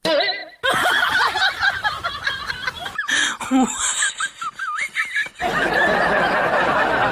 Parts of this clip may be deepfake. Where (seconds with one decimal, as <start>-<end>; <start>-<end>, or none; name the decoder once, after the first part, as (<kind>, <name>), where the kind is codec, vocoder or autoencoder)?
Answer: none